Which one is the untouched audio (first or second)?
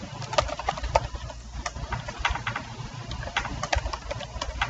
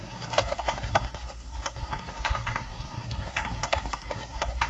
first